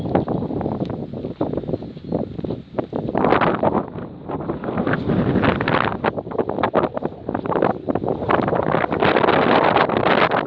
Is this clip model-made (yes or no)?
no